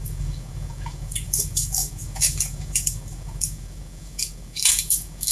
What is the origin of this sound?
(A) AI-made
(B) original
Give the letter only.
A